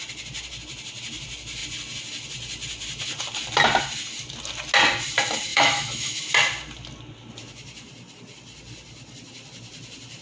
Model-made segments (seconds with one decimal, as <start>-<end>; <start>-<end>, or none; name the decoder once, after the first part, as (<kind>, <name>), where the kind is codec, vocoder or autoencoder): 5.5-6.2 (autoencoder, DAC-VAE)